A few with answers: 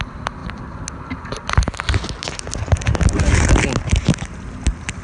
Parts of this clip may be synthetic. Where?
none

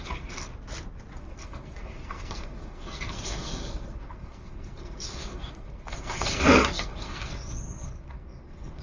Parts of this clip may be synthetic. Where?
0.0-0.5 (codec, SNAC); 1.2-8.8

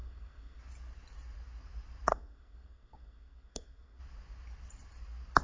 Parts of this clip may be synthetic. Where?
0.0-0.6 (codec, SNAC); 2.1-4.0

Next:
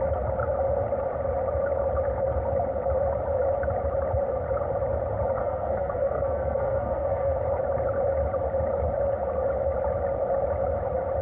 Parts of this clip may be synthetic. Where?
5.4-7.4 (codec, SNAC)

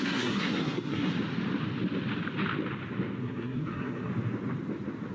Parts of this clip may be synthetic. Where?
0.0-1.1 (codec, SNAC); 3.2-4.1